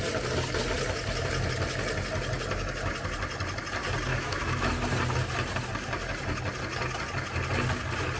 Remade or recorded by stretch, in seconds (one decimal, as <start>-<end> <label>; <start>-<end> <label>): 0.0-4.1 recorded; 4.1-4.7 remade; 4.7-8.2 recorded